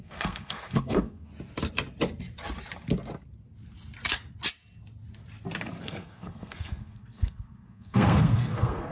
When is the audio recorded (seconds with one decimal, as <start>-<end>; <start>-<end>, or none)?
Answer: 1.3-5.8